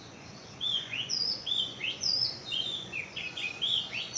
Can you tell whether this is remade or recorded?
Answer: remade